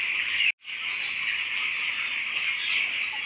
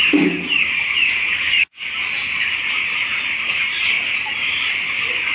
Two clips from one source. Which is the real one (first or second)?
first